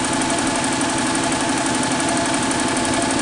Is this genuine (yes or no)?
yes